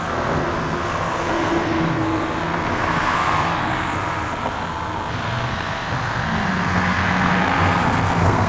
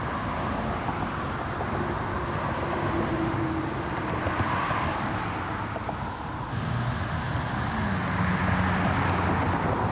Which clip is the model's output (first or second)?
first